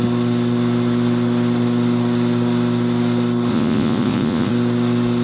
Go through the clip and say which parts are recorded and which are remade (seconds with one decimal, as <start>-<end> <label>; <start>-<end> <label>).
0.0-3.5 recorded; 3.5-4.5 remade; 4.5-5.2 recorded